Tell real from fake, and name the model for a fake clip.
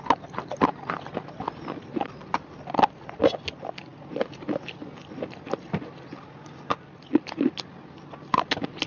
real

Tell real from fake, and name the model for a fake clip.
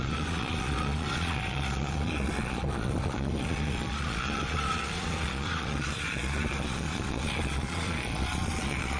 fake, vocoder, Vocos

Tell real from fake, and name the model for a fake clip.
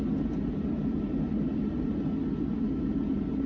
real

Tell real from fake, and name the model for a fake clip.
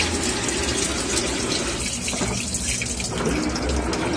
real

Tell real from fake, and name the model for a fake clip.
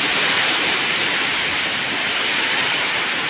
real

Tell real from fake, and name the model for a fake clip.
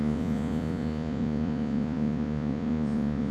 fake, vocoder, Vocos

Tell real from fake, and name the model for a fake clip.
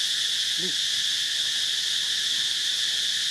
real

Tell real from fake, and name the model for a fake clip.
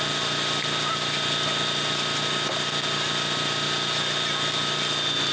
real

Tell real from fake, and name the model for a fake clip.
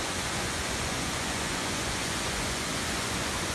fake, vocoder, Vocos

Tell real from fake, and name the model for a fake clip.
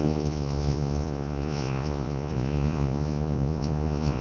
fake, vocoder, Vocos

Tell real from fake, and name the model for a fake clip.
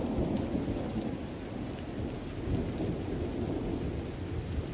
real